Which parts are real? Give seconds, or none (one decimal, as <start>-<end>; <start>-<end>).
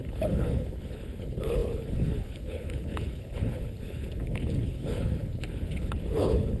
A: none